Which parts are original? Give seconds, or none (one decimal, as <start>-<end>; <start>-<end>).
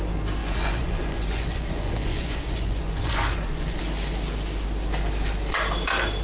0.0-0.4; 3.8-6.2